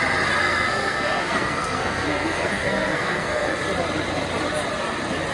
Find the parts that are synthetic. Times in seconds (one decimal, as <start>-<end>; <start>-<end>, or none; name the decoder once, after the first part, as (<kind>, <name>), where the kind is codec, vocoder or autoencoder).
0.4-3.6 (codec, SNAC)